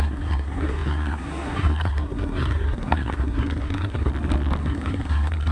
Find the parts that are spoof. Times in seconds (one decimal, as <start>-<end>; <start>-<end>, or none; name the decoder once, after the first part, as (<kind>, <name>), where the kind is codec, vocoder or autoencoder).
0.0-4.1 (codec, SNAC); 4.6-5.5